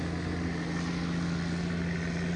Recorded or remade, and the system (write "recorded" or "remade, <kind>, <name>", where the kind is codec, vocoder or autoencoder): recorded